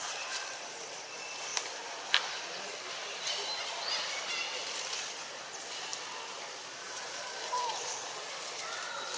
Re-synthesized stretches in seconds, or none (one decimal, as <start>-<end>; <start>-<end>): 0.0-1.5; 2.7-9.2